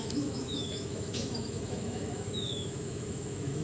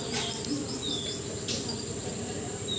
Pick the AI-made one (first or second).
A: first